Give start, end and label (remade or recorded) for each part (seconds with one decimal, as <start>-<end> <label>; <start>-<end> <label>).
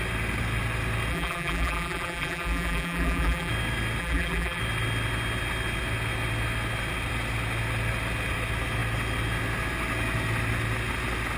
0.0-1.1 recorded; 1.1-3.5 remade; 3.5-4.0 recorded; 4.0-4.6 remade; 4.6-11.4 recorded